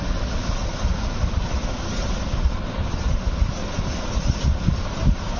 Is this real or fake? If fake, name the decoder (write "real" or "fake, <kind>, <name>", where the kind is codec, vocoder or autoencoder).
real